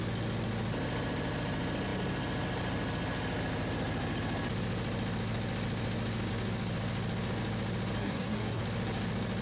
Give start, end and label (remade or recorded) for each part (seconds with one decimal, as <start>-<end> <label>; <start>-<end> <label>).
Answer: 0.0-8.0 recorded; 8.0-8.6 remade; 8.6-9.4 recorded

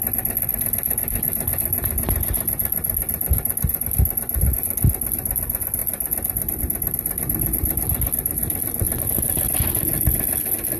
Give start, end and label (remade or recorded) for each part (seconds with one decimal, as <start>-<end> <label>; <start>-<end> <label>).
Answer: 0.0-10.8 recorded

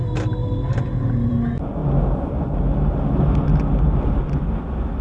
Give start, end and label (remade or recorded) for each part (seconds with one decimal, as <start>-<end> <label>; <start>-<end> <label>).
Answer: 0.0-5.0 recorded

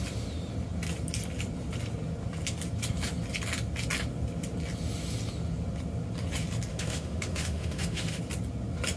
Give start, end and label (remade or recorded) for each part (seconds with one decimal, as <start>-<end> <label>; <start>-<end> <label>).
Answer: 0.0-6.7 recorded; 6.7-8.2 remade; 8.2-9.0 recorded

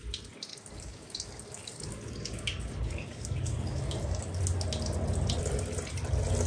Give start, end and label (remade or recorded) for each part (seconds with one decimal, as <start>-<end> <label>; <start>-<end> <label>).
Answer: 0.0-0.5 recorded; 0.5-4.4 remade; 4.4-6.5 recorded